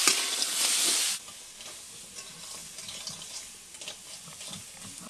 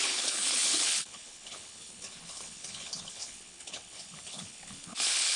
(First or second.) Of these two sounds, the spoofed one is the second